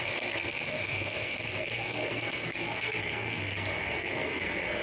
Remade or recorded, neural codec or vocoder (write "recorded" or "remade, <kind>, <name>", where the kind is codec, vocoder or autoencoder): remade, codec, SNAC